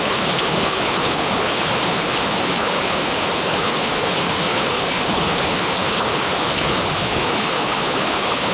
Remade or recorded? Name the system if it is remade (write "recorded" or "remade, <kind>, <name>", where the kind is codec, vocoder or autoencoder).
remade, codec, HILCodec